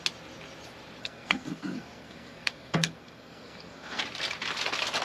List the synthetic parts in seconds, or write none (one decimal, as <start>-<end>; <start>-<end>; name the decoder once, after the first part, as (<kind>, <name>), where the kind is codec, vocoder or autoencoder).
1.0-4.0 (codec, SNAC)